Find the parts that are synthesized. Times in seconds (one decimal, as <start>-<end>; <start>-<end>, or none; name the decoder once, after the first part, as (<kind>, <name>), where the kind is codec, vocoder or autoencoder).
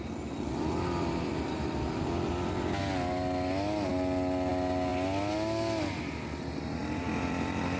1.3-2.8 (vocoder, BigVGAN v2); 6.8-7.8